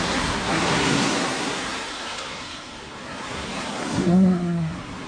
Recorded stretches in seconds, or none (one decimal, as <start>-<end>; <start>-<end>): none